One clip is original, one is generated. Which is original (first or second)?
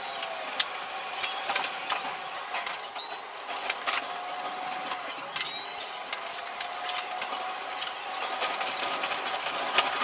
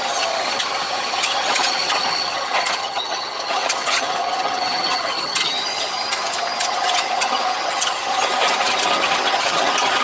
first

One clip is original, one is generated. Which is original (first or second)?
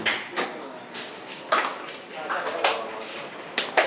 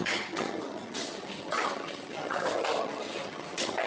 first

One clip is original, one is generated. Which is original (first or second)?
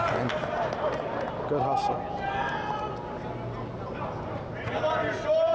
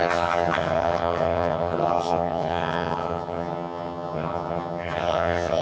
first